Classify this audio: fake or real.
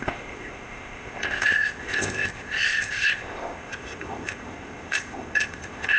fake